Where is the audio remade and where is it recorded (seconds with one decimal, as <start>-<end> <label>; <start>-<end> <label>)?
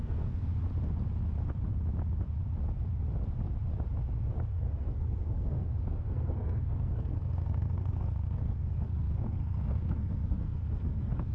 0.0-0.5 remade; 0.5-4.5 recorded; 4.5-11.3 remade